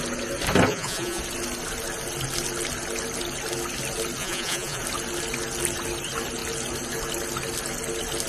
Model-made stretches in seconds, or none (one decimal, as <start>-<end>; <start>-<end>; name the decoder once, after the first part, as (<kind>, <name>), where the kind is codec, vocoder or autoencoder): 0.7-1.2 (vocoder, Vocos); 4.2-4.8